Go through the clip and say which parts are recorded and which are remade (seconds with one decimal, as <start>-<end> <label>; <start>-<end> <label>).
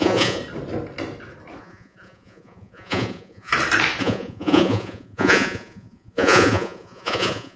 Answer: 0.0-0.4 remade; 0.4-1.6 recorded; 1.6-3.5 remade; 3.5-4.0 recorded; 4.0-7.6 remade